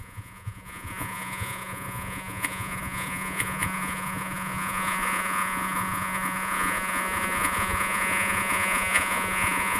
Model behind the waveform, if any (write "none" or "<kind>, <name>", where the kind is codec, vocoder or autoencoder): vocoder, Vocos